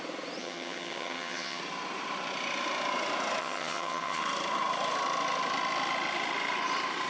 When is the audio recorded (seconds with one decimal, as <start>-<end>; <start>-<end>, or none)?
0.0-0.4; 1.6-3.4; 4.2-7.1